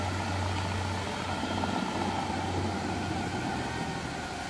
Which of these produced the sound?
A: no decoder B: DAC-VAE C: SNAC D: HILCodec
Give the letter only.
A